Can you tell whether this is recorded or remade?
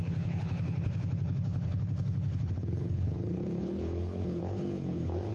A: remade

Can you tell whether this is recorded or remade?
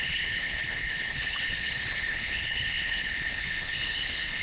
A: remade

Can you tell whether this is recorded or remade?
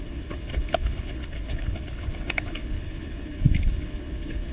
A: remade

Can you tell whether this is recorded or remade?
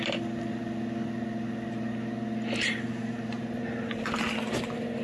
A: recorded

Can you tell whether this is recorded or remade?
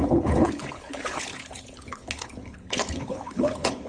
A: remade